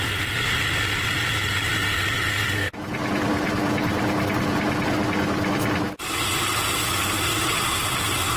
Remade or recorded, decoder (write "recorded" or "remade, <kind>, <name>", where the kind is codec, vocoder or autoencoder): recorded